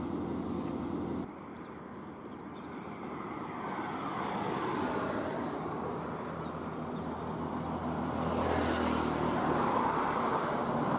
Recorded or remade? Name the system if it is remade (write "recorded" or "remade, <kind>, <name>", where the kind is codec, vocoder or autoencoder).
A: recorded